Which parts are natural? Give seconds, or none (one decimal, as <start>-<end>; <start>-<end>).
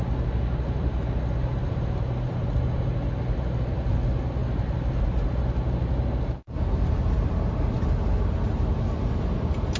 0.0-9.8